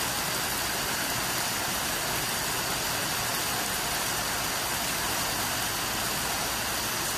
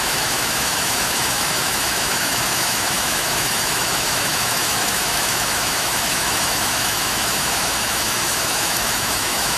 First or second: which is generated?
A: second